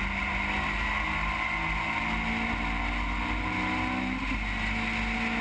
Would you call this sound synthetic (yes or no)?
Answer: no